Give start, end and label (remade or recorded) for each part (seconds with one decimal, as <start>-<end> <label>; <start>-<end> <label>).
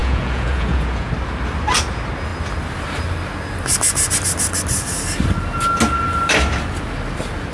0.0-1.1 remade; 1.1-7.5 recorded